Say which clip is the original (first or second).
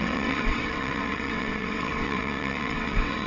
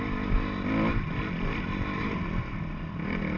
second